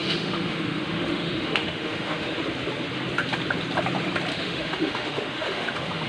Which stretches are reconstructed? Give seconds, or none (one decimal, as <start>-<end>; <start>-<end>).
0.0-2.4; 4.3-6.1